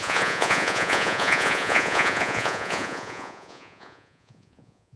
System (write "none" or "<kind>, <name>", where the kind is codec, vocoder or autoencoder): vocoder, Vocos